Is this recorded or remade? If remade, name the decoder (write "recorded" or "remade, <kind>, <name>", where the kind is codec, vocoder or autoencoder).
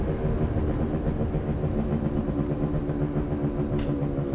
recorded